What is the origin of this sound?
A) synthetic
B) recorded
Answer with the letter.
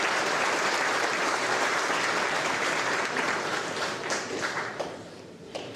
A